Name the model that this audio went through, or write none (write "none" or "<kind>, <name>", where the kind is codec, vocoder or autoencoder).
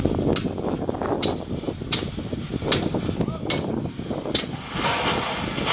none